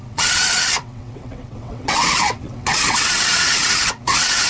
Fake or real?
fake